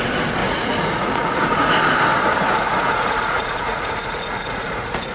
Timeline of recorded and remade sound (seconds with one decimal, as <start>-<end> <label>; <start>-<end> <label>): 0.0-0.4 recorded; 0.4-1.7 remade; 1.7-2.1 recorded; 2.1-5.1 remade